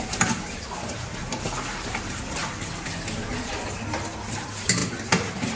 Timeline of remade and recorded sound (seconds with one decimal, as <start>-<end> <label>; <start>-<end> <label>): 0.0-5.6 recorded

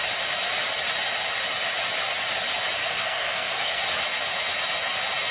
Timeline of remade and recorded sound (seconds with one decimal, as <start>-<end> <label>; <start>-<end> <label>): 0.0-2.8 recorded; 2.8-3.8 remade; 3.8-5.3 recorded

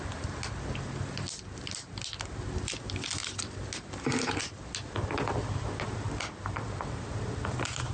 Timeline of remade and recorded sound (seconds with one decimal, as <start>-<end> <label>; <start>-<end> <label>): 0.0-7.9 recorded

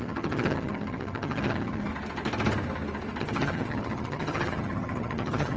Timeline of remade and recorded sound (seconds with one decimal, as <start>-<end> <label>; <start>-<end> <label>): 0.0-1.9 remade; 1.9-3.2 recorded; 3.2-5.6 remade

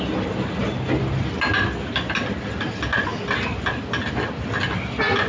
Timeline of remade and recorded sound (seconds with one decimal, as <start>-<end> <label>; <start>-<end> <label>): 0.0-5.3 recorded